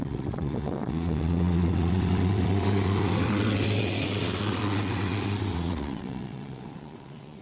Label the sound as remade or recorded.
remade